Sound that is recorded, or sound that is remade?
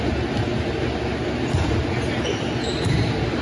recorded